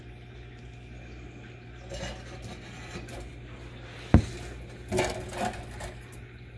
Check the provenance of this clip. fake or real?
real